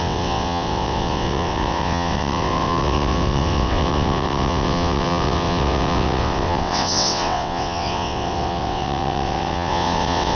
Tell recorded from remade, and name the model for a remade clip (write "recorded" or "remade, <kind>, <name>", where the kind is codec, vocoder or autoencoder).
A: remade, vocoder, WaveNeXt